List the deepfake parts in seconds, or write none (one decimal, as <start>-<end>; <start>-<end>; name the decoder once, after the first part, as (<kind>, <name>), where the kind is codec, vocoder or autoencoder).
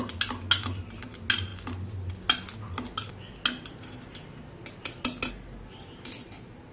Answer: none